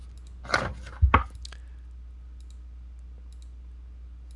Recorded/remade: recorded